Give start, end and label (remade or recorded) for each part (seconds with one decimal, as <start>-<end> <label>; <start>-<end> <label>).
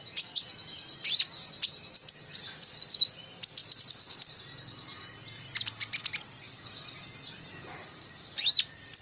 0.0-9.0 recorded